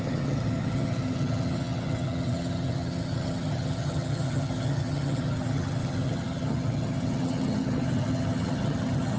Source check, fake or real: fake